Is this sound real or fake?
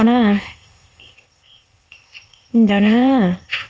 fake